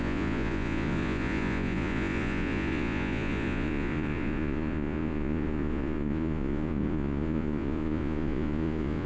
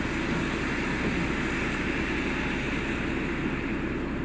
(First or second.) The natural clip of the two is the second